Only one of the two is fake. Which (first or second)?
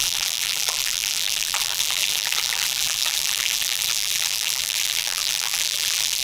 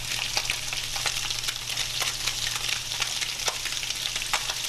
first